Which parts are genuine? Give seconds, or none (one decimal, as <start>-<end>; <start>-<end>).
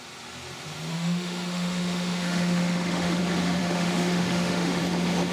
0.0-0.9; 3.2-3.6; 4.8-5.3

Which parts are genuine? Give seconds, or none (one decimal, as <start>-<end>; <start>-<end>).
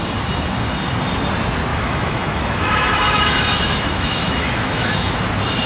0.0-1.7; 5.1-5.7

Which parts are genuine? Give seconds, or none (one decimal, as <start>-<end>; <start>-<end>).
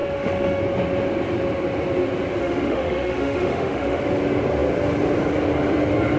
0.6-2.4; 4.0-6.2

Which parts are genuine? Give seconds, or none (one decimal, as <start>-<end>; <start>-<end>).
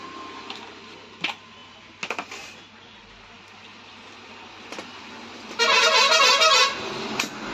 0.0-7.5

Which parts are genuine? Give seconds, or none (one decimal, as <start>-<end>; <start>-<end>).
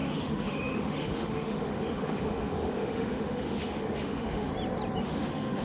4.5-5.0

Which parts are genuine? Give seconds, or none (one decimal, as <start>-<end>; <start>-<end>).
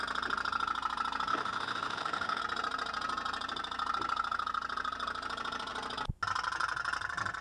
0.0-1.3; 2.4-7.4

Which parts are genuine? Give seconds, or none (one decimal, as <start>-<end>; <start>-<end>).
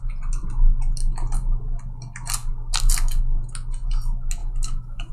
0.0-4.4